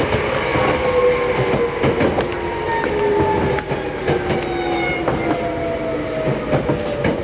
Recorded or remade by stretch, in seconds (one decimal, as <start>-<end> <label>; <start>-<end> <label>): 0.0-7.2 recorded